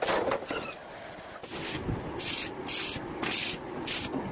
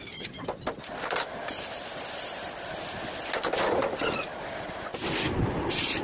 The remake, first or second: second